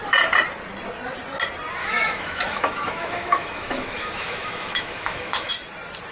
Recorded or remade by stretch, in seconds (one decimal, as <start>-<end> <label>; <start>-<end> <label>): 0.0-1.8 recorded; 1.8-5.5 remade; 5.5-6.1 recorded